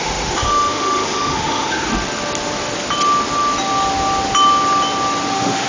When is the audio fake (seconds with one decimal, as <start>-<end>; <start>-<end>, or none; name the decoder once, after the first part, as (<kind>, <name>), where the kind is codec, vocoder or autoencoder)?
0.0-1.9 (autoencoder, DAC-VAE); 5.3-5.7